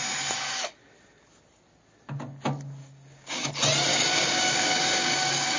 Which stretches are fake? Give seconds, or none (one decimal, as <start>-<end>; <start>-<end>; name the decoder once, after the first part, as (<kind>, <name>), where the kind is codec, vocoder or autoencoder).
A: 2.8-3.5 (codec, DAC); 3.9-5.6